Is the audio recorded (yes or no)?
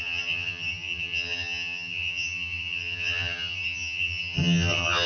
no